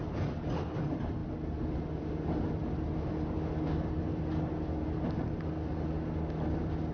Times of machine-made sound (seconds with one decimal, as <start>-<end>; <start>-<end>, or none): none